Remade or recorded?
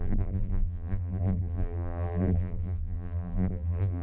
remade